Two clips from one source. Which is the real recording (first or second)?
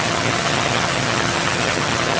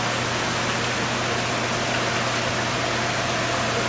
second